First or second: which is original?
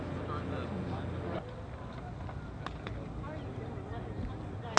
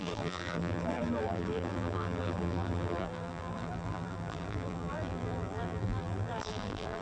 first